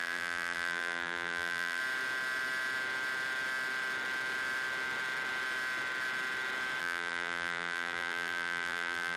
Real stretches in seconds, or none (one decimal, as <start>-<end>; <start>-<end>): 1.8-6.8